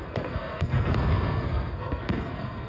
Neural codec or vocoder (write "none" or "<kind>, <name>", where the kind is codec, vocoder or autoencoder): codec, SNAC